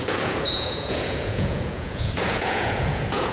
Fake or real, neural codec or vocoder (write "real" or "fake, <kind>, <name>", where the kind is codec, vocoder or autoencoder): fake, vocoder, Vocos